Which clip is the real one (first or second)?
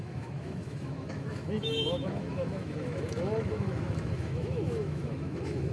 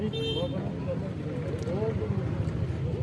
second